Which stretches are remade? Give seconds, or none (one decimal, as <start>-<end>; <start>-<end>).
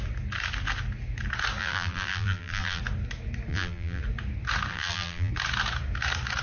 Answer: 1.6-2.8; 3.5-4.0; 4.7-5.3